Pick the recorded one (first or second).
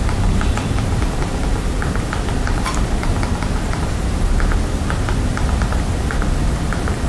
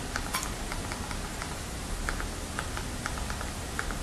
second